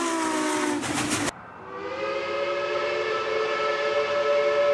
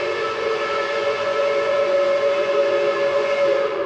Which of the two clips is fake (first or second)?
second